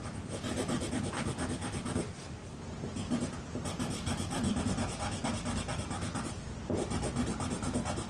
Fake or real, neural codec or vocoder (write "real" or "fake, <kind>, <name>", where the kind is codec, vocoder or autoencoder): real